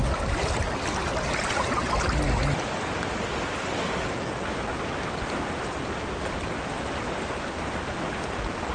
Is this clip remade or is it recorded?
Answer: recorded